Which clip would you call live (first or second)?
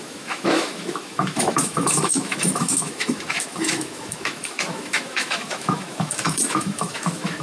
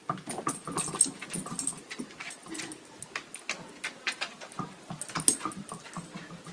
second